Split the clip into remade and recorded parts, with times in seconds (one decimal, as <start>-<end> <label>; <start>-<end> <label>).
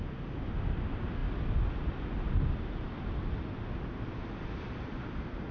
0.0-5.5 recorded